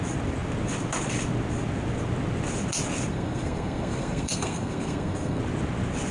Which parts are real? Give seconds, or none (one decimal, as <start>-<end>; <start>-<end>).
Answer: 0.0-3.1; 5.4-6.1